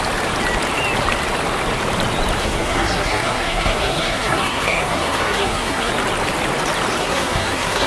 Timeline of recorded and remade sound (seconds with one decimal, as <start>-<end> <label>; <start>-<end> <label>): 0.0-2.4 recorded; 2.4-5.9 remade; 5.9-7.0 recorded; 7.0-7.9 remade